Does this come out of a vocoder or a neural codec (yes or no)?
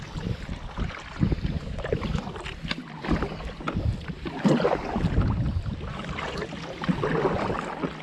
no